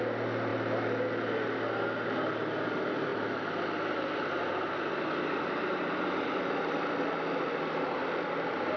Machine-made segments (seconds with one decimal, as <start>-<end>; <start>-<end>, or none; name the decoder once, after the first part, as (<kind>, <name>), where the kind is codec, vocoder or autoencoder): 3.1-7.1 (vocoder, BigVGAN v2)